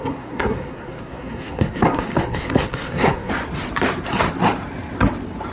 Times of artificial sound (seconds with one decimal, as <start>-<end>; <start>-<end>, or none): 0.0-3.3